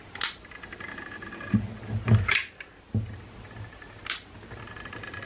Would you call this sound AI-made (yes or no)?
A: no